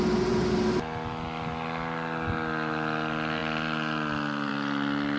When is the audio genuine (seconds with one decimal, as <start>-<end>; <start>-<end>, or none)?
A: 0.0-5.2